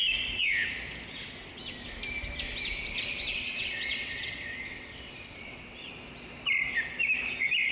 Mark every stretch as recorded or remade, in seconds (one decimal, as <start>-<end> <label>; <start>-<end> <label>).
0.0-1.1 recorded; 1.1-1.6 remade; 1.6-3.3 recorded; 3.3-5.9 remade; 5.9-7.7 recorded